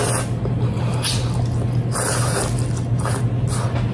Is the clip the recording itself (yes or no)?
yes